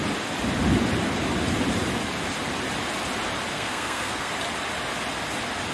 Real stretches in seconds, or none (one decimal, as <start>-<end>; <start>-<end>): 0.0-3.5; 4.3-5.7